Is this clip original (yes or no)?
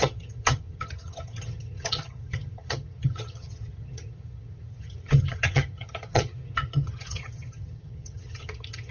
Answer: no